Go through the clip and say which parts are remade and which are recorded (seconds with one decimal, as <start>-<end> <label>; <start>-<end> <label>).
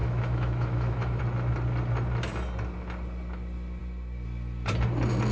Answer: 0.0-1.2 remade; 1.2-5.3 recorded